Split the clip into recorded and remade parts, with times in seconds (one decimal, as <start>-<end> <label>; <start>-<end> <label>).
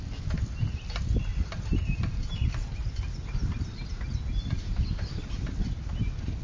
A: 0.0-1.3 recorded; 1.3-5.1 remade; 5.1-6.4 recorded